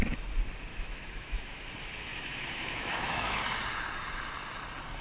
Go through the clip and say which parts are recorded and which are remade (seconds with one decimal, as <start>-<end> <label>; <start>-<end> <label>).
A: 0.0-0.7 recorded; 0.7-1.6 remade; 1.6-2.1 recorded; 2.1-3.4 remade; 3.4-5.0 recorded